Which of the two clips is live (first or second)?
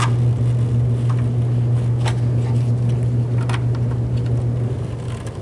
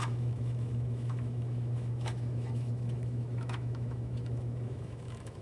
first